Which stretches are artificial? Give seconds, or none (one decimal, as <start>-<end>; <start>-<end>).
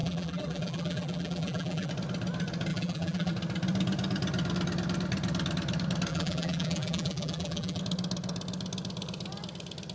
0.0-1.9; 2.7-3.3; 6.1-7.8